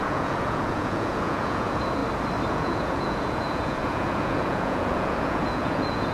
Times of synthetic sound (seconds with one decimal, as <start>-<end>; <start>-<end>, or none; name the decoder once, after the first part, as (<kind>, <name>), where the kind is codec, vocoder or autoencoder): 0.0-2.0 (vocoder, Vocos); 2.5-6.1

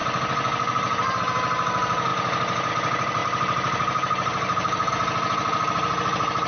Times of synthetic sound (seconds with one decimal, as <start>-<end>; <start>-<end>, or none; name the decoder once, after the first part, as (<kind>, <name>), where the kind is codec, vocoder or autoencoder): 3.2-4.9 (vocoder, BigVGAN v2)

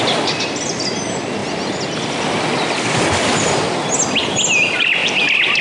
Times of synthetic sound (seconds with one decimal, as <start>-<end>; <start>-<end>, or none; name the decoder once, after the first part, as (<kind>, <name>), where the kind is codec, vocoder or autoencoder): none

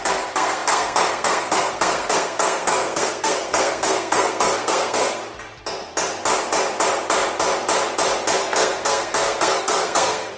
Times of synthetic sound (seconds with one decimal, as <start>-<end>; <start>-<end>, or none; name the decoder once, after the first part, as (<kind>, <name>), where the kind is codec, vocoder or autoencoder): 0.0-5.2 (codec, SNAC); 8.4-10.4

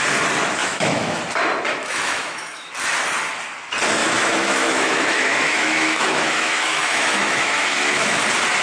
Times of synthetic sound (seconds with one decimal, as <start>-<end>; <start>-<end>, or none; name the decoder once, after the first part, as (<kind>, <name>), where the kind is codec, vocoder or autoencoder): 0.6-1.2 (autoencoder, DAC-VAE); 1.8-2.7; 4.0-8.2